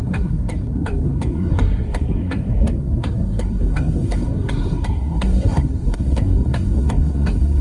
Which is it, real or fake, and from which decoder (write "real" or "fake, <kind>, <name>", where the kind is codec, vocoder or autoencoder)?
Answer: fake, codec, SNAC